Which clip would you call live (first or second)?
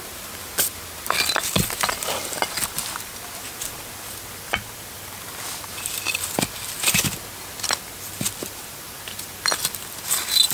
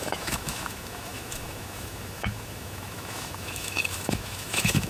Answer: first